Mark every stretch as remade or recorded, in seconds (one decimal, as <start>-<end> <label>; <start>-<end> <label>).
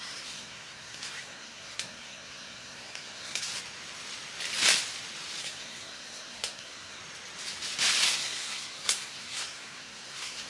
0.0-3.5 remade; 3.5-5.4 recorded; 5.4-7.0 remade; 7.0-8.0 recorded; 8.0-10.5 remade